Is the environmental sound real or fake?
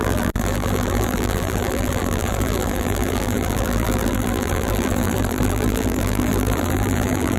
fake